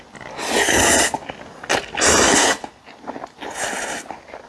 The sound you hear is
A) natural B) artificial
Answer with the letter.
A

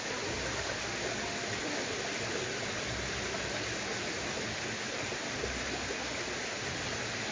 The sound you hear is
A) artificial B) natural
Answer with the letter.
B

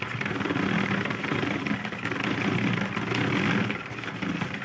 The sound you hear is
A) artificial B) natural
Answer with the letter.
B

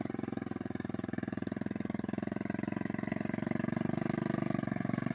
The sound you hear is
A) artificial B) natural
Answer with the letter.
A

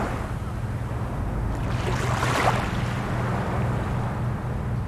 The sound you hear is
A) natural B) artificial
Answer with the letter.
A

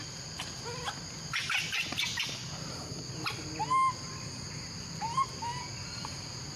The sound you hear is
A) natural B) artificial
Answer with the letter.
A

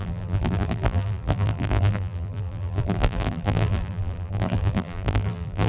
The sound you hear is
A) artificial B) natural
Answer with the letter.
A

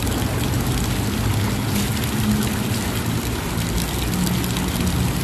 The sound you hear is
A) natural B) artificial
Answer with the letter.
A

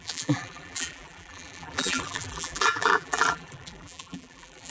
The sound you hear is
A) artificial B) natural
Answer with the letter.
A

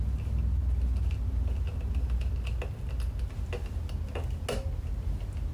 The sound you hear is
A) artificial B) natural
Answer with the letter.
B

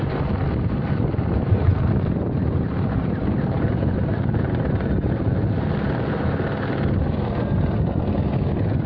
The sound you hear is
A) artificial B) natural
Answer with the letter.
B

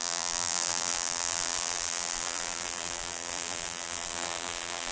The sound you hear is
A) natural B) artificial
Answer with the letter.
B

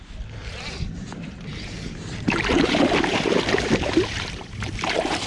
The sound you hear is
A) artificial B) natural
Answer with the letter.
A